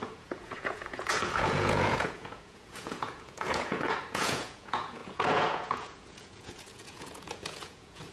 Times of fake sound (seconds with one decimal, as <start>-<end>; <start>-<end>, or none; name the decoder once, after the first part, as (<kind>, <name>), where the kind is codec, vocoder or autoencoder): 0.0-8.1 (vocoder, Vocos)